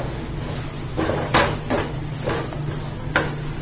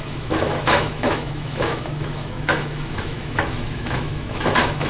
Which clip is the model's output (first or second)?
second